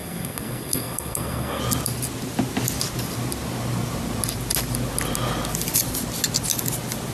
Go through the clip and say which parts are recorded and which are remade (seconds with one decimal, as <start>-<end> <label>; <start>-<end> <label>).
0.0-1.6 remade; 1.6-7.1 recorded